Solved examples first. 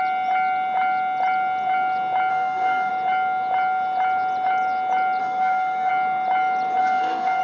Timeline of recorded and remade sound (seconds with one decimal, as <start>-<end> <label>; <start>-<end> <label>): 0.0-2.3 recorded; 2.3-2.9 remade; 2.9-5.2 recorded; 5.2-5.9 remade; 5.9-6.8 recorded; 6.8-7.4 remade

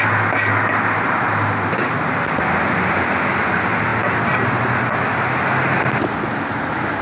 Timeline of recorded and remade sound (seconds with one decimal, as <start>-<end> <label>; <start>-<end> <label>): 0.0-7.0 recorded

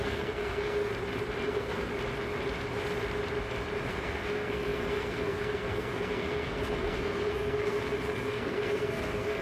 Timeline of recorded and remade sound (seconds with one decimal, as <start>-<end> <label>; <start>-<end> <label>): 0.0-0.9 remade; 0.9-1.5 recorded; 1.5-1.9 remade; 1.9-3.9 recorded; 3.9-9.4 remade

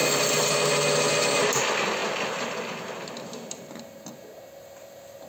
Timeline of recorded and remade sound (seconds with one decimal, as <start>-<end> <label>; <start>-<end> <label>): 0.0-5.3 recorded

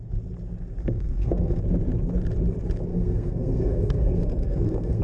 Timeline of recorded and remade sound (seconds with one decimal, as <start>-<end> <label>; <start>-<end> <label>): 0.0-0.8 recorded; 0.8-1.6 remade; 1.6-2.9 recorded; 2.9-5.0 remade

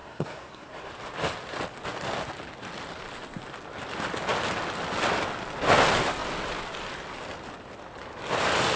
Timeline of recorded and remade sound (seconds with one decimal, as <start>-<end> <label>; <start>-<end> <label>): 0.0-0.9 remade; 0.9-8.8 recorded

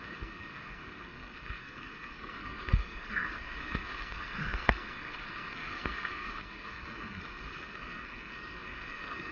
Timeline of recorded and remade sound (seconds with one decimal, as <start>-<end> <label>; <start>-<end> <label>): 0.0-9.3 remade